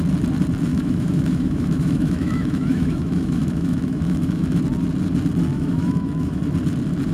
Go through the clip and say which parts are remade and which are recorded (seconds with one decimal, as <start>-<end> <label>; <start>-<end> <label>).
0.0-0.7 recorded; 0.7-4.6 remade; 4.6-5.5 recorded; 5.5-6.4 remade; 6.4-7.1 recorded

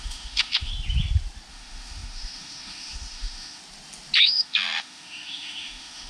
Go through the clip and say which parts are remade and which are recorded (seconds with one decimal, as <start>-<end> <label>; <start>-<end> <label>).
0.0-0.7 remade; 0.7-1.5 recorded; 1.5-3.6 remade; 3.6-4.2 recorded; 4.2-6.1 remade

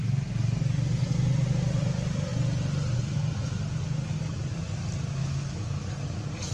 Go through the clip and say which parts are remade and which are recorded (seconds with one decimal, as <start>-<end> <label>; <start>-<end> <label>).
0.0-5.2 recorded; 5.2-5.9 remade; 5.9-6.5 recorded

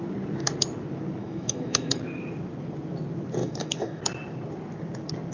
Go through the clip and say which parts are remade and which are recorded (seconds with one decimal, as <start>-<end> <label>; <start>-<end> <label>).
0.0-1.2 recorded; 1.2-2.0 remade; 2.0-3.4 recorded; 3.4-4.0 remade; 4.0-5.3 recorded